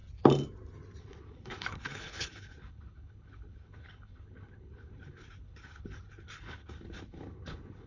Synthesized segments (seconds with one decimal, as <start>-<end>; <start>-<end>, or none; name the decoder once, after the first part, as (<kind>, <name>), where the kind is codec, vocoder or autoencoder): 1.0-7.9 (codec, HILCodec)

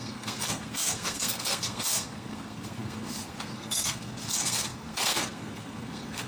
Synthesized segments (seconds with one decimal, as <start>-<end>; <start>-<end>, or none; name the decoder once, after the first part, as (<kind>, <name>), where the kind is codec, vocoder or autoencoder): 0.0-6.3 (codec, SNAC)

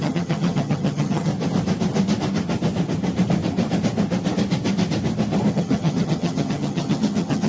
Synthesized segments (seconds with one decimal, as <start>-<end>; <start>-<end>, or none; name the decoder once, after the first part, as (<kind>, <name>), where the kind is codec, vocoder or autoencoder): 0.0-1.3 (vocoder, HiFi-GAN); 5.5-7.5

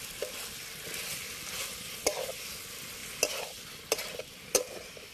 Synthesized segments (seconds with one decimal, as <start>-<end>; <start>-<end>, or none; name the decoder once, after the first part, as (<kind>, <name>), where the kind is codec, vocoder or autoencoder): none

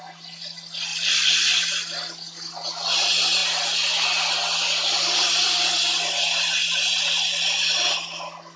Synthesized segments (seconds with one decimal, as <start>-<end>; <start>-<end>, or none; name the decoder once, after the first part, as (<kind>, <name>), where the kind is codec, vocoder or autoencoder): 0.9-1.7 (vocoder, BigVGAN v2)

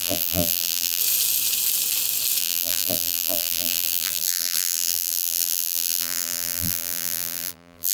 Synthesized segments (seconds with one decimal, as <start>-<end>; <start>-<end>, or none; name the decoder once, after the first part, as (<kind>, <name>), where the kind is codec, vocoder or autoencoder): 0.0-1.0 (vocoder, BigVGAN v2); 2.4-7.9

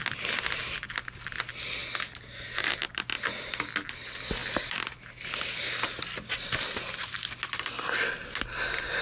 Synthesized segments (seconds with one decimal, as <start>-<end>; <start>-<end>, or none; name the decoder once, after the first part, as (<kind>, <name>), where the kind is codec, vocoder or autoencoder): none

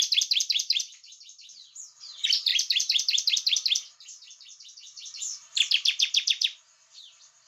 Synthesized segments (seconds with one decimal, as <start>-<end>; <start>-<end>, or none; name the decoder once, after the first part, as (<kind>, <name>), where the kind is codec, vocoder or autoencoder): 0.0-7.5 (vocoder, BigVGAN v2)